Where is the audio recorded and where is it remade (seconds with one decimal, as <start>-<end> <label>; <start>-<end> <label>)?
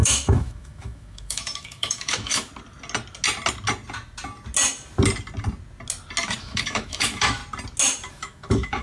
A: 0.0-2.5 remade; 2.5-6.4 recorded; 6.4-7.4 remade; 7.4-8.1 recorded; 8.1-8.8 remade